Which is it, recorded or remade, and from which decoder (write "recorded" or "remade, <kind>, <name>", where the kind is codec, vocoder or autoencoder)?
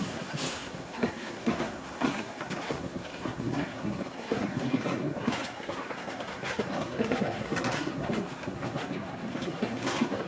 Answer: remade, codec, SNAC